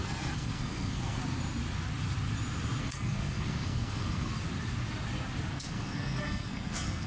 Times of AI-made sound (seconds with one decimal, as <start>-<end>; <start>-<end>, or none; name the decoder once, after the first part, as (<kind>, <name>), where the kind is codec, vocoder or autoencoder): 0.0-1.2 (codec, SNAC); 2.8-4.3; 5.5-7.1